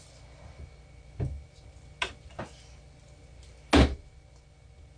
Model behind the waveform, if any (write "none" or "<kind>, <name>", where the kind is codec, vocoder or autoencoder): none